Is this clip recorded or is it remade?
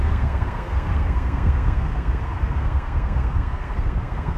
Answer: remade